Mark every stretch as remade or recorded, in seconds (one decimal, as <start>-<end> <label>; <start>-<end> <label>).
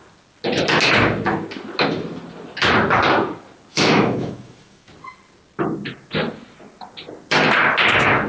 0.0-3.7 recorded; 3.7-4.9 remade; 4.9-8.3 recorded